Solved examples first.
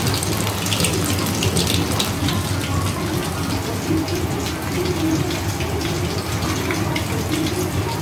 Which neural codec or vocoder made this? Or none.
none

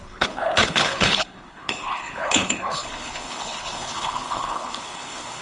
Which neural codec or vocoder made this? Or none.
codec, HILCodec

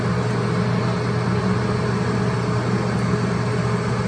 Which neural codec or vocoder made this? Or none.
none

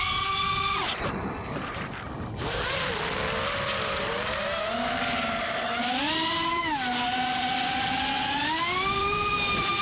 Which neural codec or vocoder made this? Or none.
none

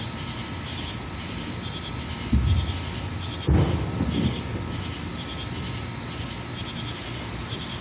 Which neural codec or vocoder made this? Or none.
none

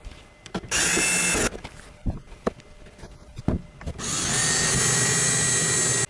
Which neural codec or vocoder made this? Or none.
none